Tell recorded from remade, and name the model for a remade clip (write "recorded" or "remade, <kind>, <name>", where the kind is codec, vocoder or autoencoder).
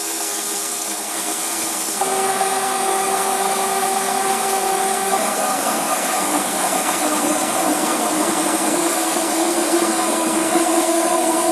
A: remade, codec, SNAC